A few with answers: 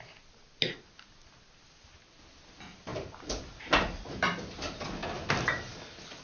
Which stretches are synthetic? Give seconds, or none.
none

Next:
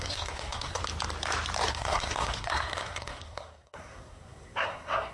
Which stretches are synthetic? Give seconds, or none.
0.0-0.8 (codec, SNAC); 1.7-5.1

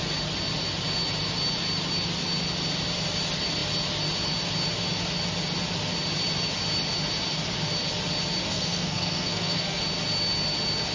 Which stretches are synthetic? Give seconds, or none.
8.4-9.8 (codec, SNAC)

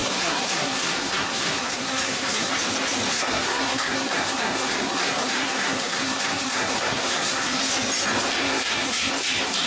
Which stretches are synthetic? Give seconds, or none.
0.0-2.5 (codec, SNAC); 3.1-7.6; 8.4-9.1

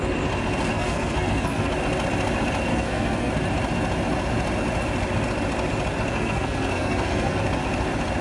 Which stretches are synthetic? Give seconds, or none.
0.7-1.7 (codec, SNAC); 2.7-3.3; 6.1-7.4

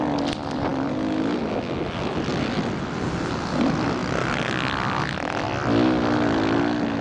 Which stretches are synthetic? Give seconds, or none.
none

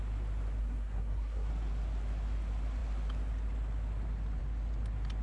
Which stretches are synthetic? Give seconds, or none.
0.6-1.5 (codec, SNAC)

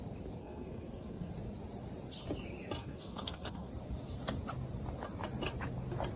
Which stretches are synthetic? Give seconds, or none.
0.4-1.3 (codec, SNAC); 2.8-3.7